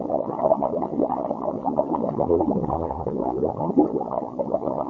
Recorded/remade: remade